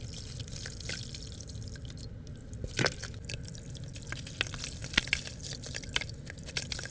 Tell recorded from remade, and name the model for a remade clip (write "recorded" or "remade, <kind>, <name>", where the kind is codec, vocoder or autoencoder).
recorded